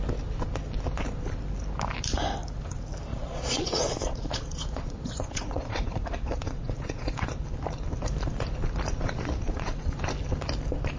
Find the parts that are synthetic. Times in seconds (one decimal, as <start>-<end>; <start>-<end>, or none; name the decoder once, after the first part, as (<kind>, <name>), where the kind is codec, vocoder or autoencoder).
3.1-7.4 (vocoder, Vocos); 8.9-10.0